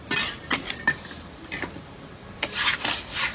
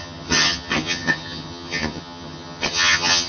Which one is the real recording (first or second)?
first